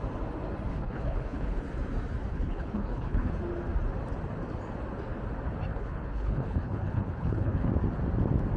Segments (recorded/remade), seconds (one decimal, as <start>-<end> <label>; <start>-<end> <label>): 0.0-0.7 recorded; 0.7-1.6 remade; 1.6-2.3 recorded; 2.3-3.3 remade; 3.3-5.7 recorded; 5.7-7.7 remade; 7.7-8.6 recorded